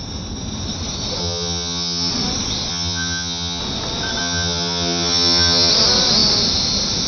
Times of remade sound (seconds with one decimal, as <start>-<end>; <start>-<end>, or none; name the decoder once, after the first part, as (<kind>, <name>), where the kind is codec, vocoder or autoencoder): 1.2-2.1 (vocoder, HiFi-GAN); 2.7-3.6; 4.2-5.7